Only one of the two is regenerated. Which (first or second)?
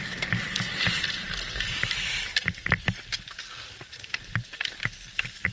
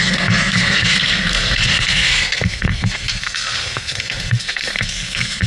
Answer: second